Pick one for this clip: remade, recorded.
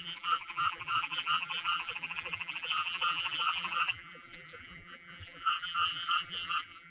remade